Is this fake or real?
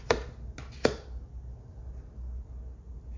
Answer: real